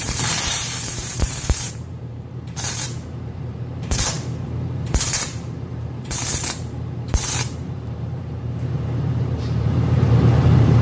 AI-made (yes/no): yes